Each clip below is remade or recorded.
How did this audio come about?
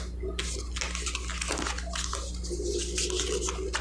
recorded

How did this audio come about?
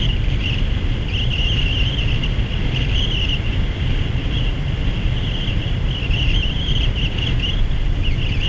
recorded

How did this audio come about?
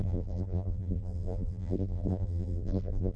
remade